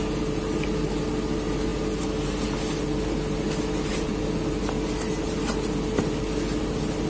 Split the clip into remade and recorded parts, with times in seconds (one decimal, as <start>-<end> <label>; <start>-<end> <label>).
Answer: 0.0-7.1 recorded